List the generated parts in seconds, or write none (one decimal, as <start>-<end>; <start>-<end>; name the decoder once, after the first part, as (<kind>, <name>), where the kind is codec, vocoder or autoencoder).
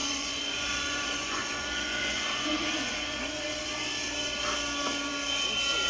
0.0-3.5 (vocoder, Vocos)